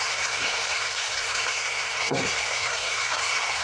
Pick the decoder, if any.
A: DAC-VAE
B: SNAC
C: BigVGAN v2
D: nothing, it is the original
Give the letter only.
B